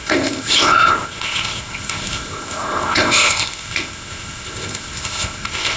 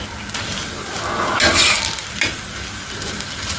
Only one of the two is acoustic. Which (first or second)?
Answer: second